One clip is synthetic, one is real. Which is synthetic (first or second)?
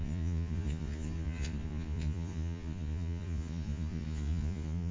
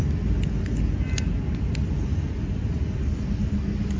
first